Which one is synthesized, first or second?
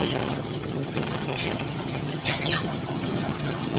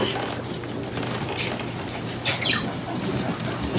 first